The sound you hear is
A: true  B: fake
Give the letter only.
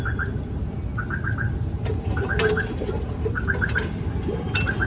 A